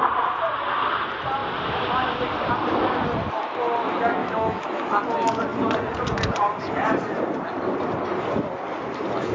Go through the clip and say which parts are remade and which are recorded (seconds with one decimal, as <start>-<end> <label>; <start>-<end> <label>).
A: 0.0-4.2 recorded; 4.2-5.0 remade; 5.0-9.3 recorded